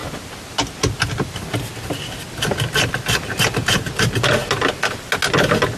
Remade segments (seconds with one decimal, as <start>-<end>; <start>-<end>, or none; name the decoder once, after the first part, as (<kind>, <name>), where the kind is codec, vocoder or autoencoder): none